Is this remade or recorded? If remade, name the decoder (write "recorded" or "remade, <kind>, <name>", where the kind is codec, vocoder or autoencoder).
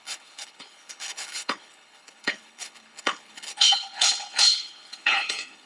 remade, codec, HILCodec